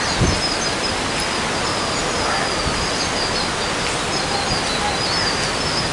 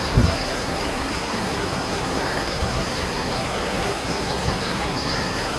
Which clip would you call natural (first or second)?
first